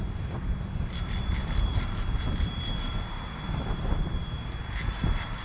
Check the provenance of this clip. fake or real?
fake